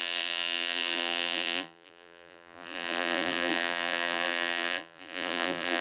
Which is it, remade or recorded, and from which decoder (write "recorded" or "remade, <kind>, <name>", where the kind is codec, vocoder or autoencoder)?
remade, vocoder, BigVGAN v2